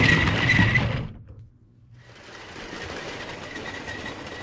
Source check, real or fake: real